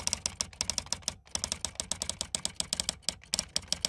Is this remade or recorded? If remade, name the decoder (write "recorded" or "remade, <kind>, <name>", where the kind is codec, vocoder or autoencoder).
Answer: recorded